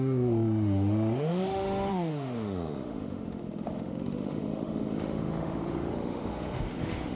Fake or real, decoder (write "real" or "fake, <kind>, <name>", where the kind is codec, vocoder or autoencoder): fake, autoencoder, DAC-VAE